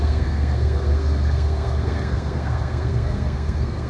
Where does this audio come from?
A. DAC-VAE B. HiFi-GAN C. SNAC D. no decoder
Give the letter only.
C